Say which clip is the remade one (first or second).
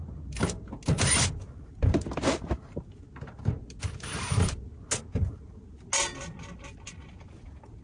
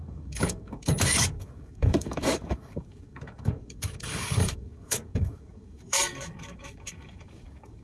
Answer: second